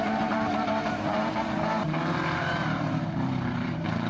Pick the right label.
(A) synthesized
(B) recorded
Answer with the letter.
A